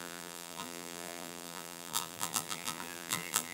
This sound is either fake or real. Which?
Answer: fake